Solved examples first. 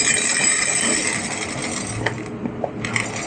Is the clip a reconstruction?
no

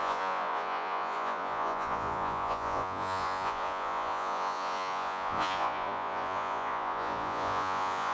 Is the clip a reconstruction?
yes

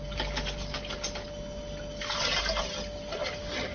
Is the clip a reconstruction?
no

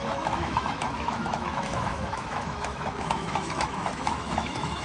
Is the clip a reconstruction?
yes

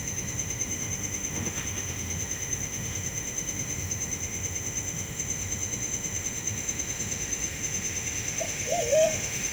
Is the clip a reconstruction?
yes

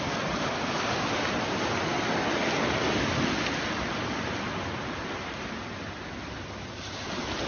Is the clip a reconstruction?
no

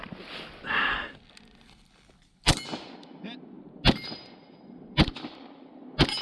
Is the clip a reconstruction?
no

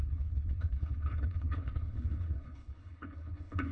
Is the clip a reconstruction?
yes